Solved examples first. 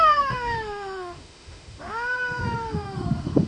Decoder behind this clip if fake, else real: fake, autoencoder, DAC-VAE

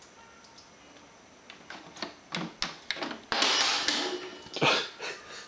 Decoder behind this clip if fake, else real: real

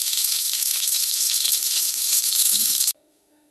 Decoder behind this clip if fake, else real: fake, autoencoder, DAC-VAE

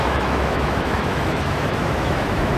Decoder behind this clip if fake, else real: fake, autoencoder, DAC-VAE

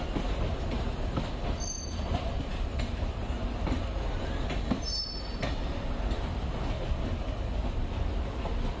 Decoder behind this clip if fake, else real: real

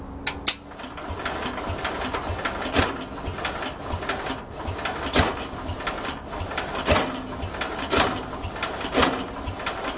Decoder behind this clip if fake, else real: real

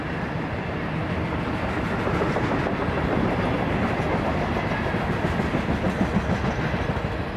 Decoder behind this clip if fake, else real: real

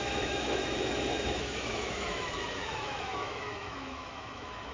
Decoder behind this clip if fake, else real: fake, autoencoder, DAC-VAE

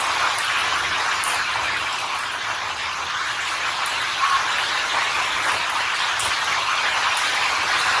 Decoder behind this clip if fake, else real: real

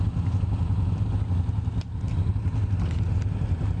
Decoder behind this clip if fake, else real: real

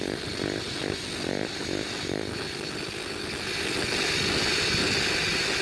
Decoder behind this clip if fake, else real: real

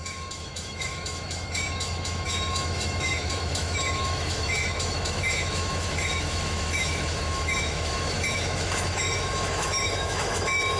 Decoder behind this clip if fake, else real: fake, autoencoder, DAC-VAE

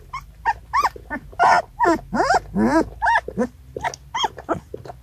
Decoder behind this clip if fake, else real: real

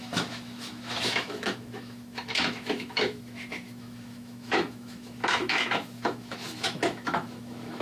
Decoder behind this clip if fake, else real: fake, autoencoder, DAC-VAE